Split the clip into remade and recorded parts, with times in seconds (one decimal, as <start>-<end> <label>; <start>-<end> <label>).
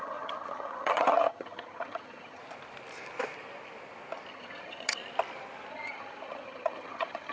0.0-2.4 remade; 2.4-4.3 recorded; 4.3-5.0 remade; 5.0-5.7 recorded; 5.7-7.3 remade